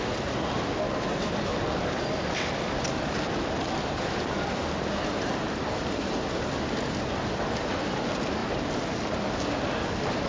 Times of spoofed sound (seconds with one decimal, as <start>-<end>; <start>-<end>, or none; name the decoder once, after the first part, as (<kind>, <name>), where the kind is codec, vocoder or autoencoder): 1.5-3.7 (vocoder, BigVGAN v2); 8.4-9.2